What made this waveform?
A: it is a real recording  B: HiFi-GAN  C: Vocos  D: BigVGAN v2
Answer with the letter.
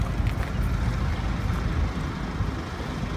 A